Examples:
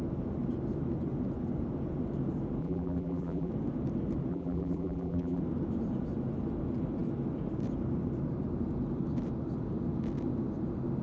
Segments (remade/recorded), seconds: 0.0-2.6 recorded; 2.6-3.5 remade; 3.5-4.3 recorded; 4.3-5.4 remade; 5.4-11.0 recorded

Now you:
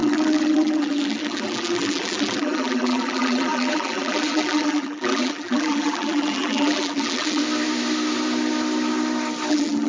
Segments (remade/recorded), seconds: 0.0-7.4 remade; 7.4-9.5 recorded; 9.5-9.9 remade

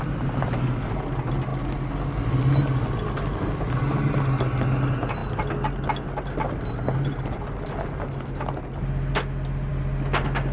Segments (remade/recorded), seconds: 0.0-10.5 recorded

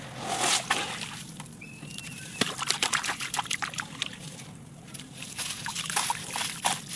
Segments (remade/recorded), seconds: 0.0-1.9 recorded; 1.9-6.1 remade; 6.1-7.0 recorded